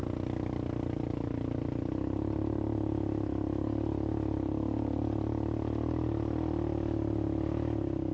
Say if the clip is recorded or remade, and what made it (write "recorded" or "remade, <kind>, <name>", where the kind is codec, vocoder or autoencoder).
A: recorded